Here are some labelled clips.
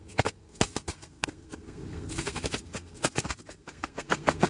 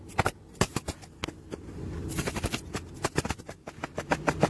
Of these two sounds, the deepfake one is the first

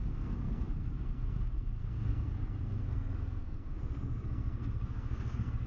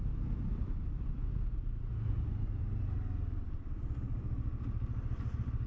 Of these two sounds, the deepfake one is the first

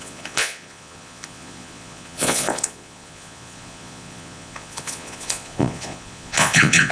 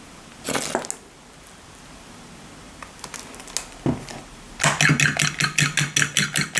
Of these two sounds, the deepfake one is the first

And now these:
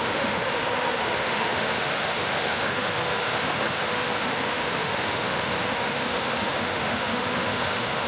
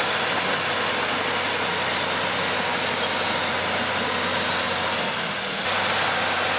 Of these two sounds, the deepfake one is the first